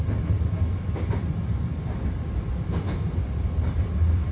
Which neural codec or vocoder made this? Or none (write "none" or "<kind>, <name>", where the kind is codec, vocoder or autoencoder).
none